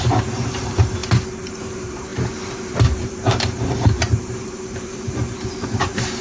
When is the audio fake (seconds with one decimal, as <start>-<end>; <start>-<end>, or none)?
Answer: 0.0-1.0; 1.5-6.2